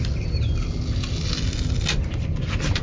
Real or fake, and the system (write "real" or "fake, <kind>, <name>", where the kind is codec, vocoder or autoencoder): real